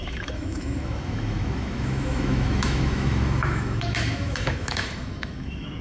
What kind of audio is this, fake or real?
fake